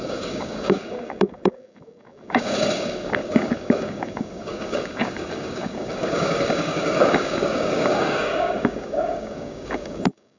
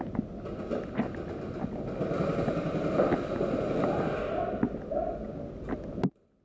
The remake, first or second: first